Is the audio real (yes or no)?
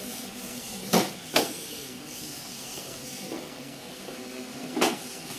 no